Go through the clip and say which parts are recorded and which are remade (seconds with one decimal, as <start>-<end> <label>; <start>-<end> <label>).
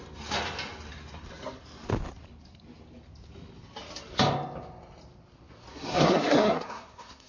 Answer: 0.0-5.7 recorded; 5.7-7.3 remade